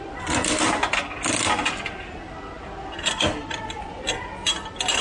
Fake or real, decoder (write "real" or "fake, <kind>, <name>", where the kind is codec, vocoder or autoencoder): real